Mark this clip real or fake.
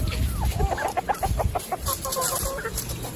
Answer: real